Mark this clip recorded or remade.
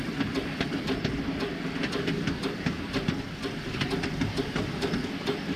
recorded